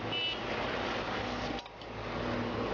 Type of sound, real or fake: real